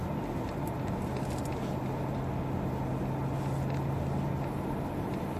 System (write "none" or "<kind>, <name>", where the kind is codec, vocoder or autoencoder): none